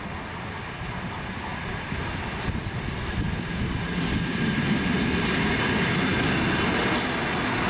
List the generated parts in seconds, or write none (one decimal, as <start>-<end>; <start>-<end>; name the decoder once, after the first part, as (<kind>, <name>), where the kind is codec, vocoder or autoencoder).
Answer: none